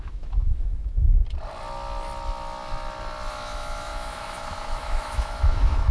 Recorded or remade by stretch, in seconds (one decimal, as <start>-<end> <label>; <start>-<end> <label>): 0.0-1.2 remade; 1.2-3.3 recorded; 3.3-5.9 remade